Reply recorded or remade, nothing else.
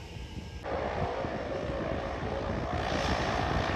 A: recorded